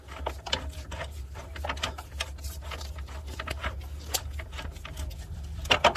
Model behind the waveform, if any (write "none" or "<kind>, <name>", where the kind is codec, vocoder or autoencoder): vocoder, BigVGAN v2